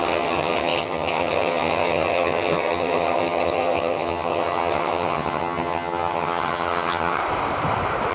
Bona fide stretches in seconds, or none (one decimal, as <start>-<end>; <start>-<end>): 7.2-8.1